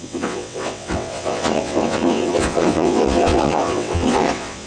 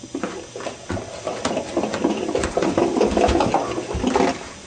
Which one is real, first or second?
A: second